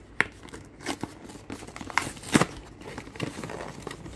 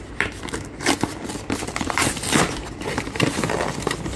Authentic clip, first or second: first